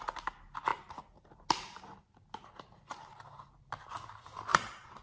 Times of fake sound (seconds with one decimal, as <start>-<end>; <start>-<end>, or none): 4.5-5.0